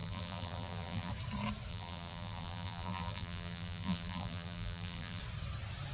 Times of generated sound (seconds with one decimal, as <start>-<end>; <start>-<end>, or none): 0.0-1.1; 1.7-5.2